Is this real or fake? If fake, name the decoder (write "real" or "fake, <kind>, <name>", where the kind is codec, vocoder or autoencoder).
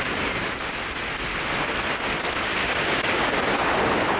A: real